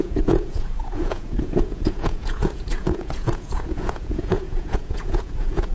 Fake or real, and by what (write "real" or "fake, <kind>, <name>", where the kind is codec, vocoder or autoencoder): fake, vocoder, Vocos